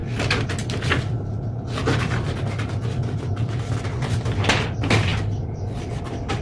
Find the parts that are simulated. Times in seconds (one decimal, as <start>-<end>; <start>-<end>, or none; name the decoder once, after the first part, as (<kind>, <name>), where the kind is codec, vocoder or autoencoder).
1.0-5.1 (vocoder, BigVGAN v2); 6.0-6.4